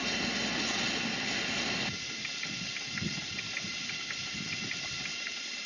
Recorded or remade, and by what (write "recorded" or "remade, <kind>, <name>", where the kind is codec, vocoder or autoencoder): recorded